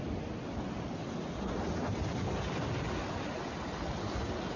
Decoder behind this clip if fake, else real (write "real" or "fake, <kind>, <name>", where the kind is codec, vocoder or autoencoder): real